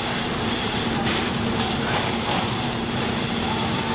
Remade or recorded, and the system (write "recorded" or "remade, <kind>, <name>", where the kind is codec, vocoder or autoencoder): remade, vocoder, BigVGAN v2